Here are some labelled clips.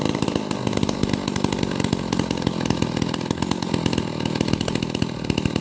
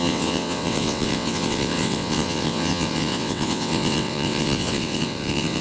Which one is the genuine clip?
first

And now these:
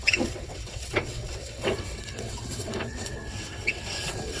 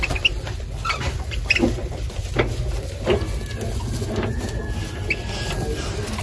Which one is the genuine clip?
second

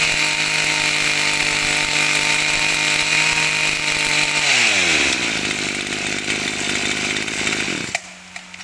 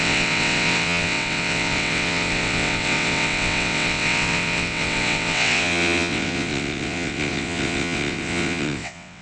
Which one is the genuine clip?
first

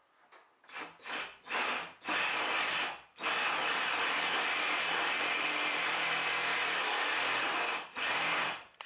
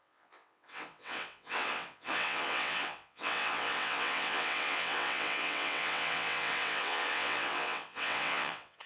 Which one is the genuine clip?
first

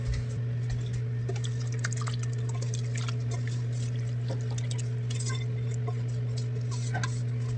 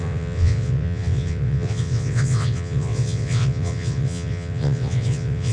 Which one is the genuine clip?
first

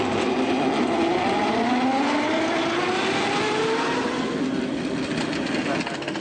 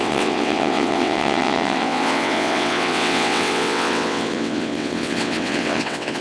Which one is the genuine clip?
first